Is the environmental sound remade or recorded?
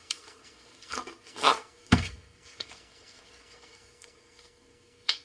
remade